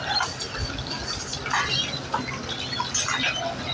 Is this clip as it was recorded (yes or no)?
yes